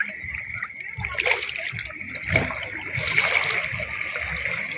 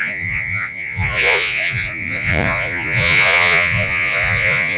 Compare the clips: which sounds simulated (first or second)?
second